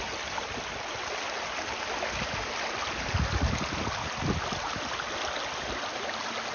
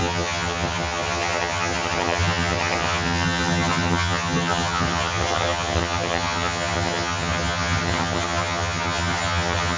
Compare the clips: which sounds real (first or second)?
first